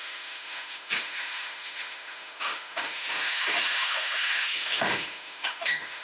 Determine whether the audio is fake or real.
fake